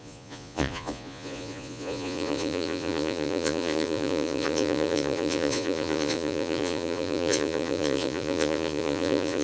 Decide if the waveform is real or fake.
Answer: fake